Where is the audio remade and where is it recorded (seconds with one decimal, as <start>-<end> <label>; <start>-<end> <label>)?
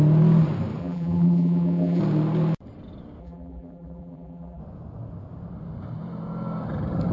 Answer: 0.0-0.8 recorded; 0.8-2.0 remade; 2.0-3.2 recorded; 3.2-4.6 remade; 4.6-7.1 recorded